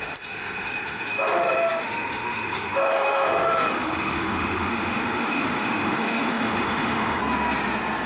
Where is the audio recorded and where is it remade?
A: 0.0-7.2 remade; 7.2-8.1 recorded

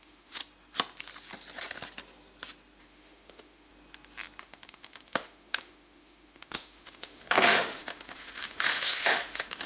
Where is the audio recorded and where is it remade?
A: 0.0-0.4 remade; 0.4-2.8 recorded; 2.8-3.7 remade; 3.7-4.4 recorded; 4.4-9.7 remade

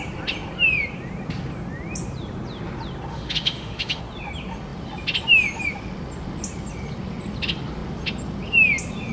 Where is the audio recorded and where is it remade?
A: 0.0-3.1 recorded; 3.1-4.0 remade; 4.0-9.1 recorded

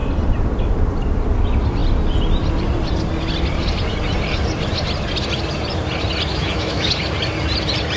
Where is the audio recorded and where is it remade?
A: 0.0-6.3 recorded; 6.3-6.9 remade; 6.9-8.0 recorded